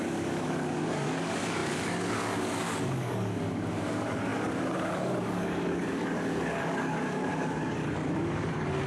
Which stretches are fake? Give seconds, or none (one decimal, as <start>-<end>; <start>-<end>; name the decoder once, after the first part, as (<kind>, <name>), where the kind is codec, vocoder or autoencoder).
0.0-8.9 (codec, DAC)